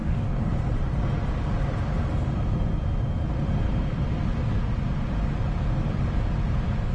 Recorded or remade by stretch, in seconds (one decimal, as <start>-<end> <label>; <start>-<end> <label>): 0.0-0.5 remade; 0.5-6.9 recorded